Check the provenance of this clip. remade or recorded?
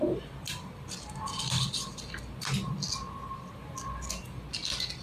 recorded